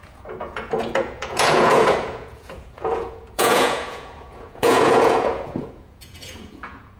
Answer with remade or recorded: remade